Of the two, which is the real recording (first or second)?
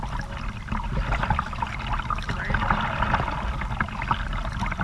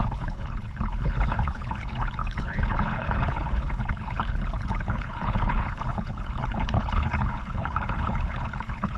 first